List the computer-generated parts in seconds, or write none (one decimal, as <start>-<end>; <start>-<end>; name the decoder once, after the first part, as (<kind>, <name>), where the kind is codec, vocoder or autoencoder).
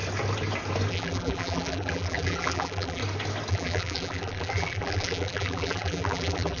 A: 0.9-3.0 (vocoder, BigVGAN v2); 3.5-6.6